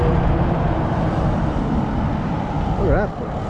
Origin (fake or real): real